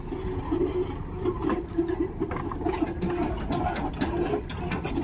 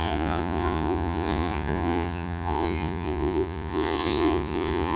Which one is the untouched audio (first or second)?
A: first